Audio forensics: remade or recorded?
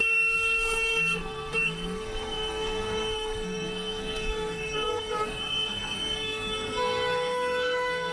remade